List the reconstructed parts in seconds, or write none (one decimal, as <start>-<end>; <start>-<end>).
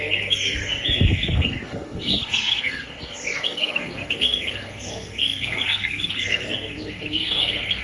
0.0-7.8